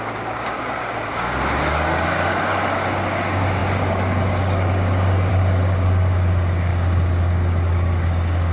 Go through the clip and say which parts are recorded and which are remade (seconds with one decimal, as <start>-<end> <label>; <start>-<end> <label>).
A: 0.0-8.5 remade